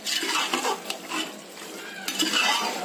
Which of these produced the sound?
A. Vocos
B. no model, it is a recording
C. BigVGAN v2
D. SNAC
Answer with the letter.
B